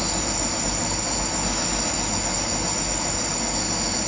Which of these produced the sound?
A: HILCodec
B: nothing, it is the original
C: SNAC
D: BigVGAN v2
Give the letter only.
B